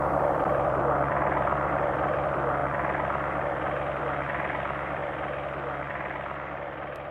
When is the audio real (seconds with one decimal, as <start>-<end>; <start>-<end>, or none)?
2.6-4.0; 5.0-7.1